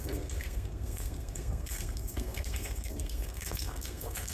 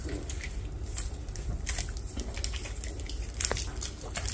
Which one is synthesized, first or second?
first